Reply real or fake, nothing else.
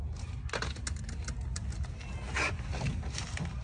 real